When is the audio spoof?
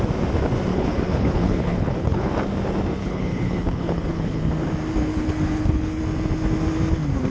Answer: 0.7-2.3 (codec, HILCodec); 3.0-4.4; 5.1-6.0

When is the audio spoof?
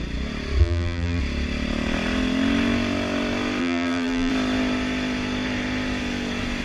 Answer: 0.6-1.2 (vocoder, BigVGAN v2); 3.6-4.3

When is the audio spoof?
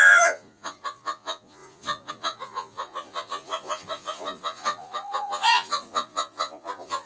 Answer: 0.0-7.1 (vocoder, Vocos)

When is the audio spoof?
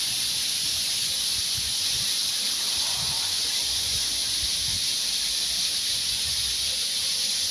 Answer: 0.0-2.2 (vocoder, Vocos); 2.8-4.2; 5.3-7.5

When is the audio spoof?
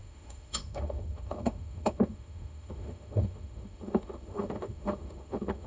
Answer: 0.0-5.7 (autoencoder, DAC-VAE)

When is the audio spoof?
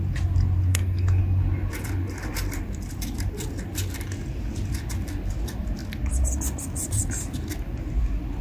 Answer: 0.7-1.2 (codec, SNAC)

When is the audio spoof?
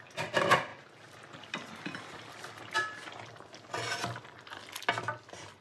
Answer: none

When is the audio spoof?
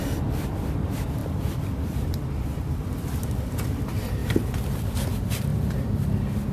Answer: 1.2-3.3 (vocoder, BigVGAN v2); 4.2-5.1; 5.5-6.1